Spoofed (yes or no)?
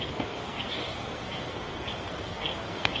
yes